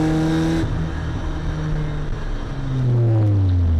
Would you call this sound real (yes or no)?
yes